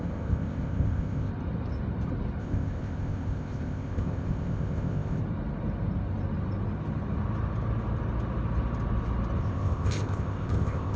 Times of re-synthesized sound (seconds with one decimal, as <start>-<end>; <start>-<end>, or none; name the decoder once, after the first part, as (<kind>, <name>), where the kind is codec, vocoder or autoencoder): 0.0-1.3 (codec, ZipCodec); 2.4-5.2; 9.4-11.0